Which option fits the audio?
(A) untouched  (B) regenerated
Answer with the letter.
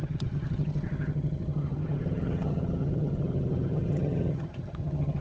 B